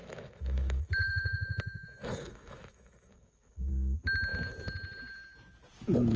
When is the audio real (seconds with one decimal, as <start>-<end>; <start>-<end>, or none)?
3.7-6.2